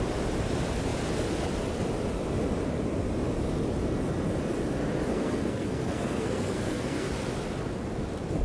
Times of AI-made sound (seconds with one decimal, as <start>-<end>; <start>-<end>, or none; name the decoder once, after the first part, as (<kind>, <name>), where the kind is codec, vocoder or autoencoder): 5.1-7.1 (codec, SNAC)